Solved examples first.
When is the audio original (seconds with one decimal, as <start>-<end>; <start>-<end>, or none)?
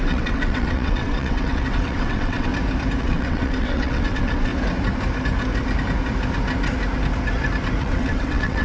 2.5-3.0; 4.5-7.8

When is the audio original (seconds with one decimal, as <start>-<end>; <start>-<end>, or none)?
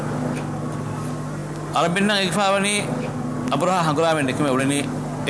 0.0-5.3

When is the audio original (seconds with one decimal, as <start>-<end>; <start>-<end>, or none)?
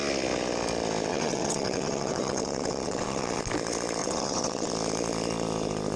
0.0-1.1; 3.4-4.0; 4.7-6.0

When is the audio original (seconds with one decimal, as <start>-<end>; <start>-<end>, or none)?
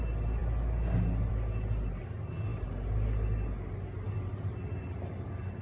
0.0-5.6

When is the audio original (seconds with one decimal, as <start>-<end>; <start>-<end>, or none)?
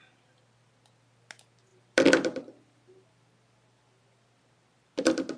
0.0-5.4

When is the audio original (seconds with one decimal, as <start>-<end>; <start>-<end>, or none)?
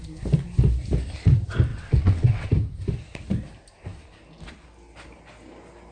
0.0-1.7; 2.5-5.9